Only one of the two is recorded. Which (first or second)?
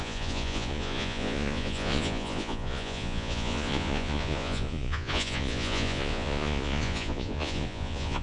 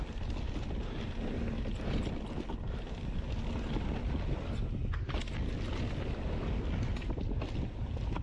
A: second